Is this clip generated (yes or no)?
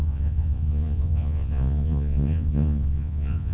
yes